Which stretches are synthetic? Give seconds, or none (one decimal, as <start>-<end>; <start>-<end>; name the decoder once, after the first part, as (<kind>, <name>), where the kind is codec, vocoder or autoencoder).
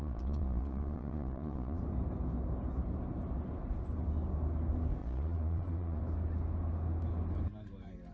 0.0-1.8 (vocoder, Vocos); 5.0-6.0